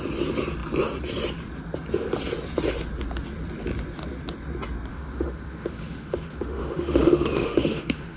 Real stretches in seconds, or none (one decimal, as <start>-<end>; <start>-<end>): 0.0-4.9